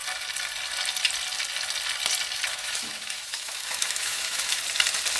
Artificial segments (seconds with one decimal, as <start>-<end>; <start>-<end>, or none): 2.5-4.6